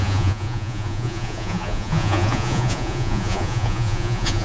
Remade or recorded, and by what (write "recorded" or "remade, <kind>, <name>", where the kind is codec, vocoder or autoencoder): remade, vocoder, Vocos